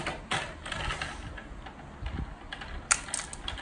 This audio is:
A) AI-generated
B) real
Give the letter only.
B